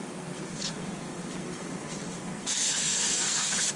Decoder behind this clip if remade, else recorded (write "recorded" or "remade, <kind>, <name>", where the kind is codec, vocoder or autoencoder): remade, codec, SNAC